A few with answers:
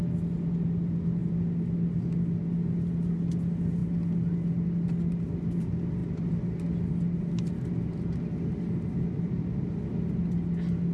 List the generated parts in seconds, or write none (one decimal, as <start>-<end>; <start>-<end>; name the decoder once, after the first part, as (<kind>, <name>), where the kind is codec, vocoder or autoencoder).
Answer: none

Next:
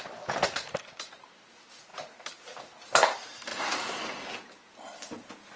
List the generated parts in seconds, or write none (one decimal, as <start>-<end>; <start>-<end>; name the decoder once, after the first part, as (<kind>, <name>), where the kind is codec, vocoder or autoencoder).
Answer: 3.5-4.0 (vocoder, Vocos)

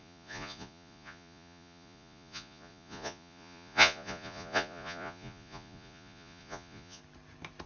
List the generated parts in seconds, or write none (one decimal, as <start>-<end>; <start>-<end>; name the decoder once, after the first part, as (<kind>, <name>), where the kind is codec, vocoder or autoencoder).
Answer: 0.0-7.0 (vocoder, Vocos)

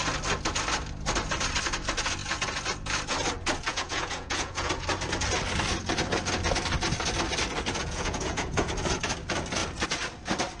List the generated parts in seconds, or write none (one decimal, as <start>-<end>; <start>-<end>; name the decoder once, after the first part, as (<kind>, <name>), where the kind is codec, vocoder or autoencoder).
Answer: 3.7-4.7 (vocoder, Vocos); 7.8-8.7

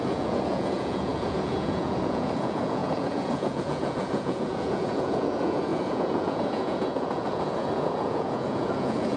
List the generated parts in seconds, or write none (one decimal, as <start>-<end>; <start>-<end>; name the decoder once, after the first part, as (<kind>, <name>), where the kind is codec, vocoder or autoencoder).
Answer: 0.0-9.2 (vocoder, Vocos)

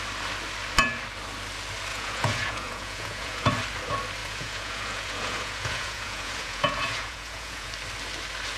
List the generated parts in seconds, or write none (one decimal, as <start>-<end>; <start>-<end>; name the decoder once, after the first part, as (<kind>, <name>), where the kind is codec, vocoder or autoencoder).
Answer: 1.9-3.5 (vocoder, Vocos); 4.2-7.7

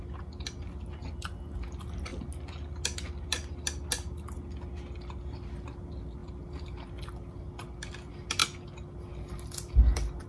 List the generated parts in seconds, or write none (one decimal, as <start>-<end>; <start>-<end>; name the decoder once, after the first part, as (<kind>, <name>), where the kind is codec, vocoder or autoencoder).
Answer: none

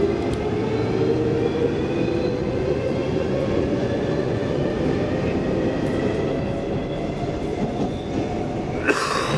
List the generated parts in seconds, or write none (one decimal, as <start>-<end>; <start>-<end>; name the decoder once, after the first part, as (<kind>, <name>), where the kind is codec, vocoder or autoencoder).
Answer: 2.3-4.8 (vocoder, Vocos); 7.5-8.3